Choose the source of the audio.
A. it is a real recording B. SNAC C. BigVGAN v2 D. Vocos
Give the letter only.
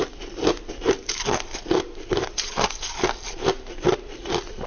A